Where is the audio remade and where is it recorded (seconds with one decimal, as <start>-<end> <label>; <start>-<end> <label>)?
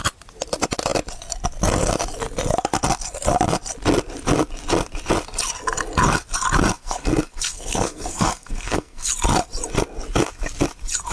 0.0-6.8 recorded; 6.8-9.1 remade; 9.1-11.1 recorded